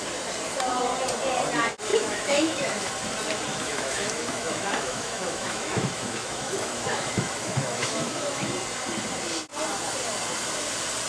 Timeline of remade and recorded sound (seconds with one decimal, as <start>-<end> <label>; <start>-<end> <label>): 0.0-1.9 recorded; 1.9-2.9 remade; 2.9-3.5 recorded; 3.5-8.5 remade; 8.5-11.1 recorded